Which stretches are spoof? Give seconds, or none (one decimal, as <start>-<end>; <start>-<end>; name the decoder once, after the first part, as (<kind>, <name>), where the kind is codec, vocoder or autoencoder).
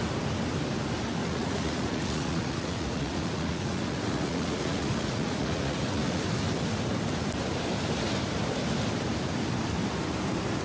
1.2-6.2 (vocoder, Vocos)